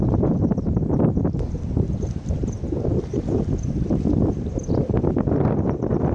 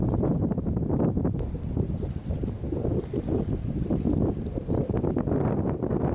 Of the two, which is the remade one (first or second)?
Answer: first